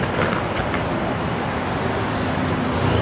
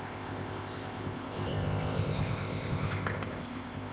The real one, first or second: first